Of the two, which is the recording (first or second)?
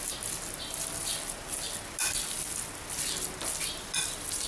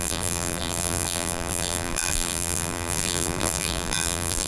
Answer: first